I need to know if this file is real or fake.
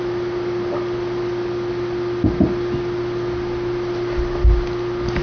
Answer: real